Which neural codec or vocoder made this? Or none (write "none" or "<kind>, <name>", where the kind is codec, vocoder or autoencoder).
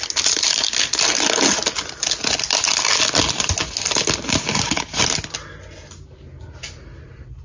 none